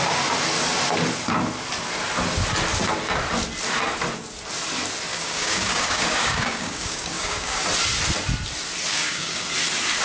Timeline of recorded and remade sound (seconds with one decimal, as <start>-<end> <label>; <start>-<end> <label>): 0.0-5.1 recorded; 5.1-7.6 remade; 7.6-8.9 recorded; 8.9-9.5 remade; 9.5-10.0 recorded